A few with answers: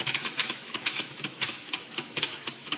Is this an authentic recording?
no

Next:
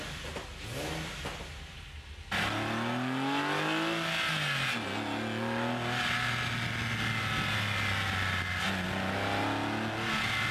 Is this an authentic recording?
yes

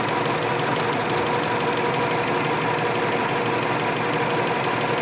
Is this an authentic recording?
yes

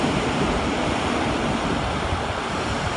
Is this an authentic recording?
no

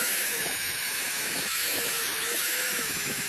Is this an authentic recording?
no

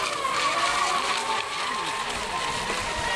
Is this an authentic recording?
yes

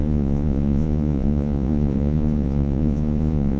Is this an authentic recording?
no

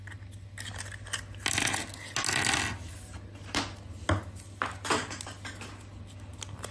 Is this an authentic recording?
yes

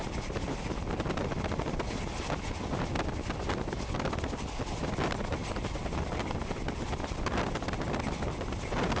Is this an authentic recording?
yes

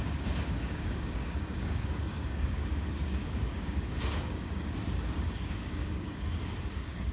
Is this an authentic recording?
no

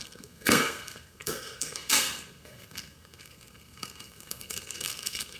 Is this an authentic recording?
no